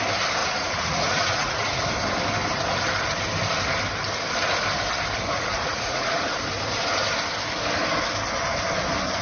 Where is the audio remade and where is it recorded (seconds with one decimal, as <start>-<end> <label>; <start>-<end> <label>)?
0.0-0.4 recorded; 0.4-1.8 remade; 1.8-5.3 recorded; 5.3-6.3 remade; 6.3-9.2 recorded